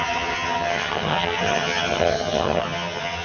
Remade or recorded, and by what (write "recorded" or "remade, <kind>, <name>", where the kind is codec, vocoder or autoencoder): remade, vocoder, HiFi-GAN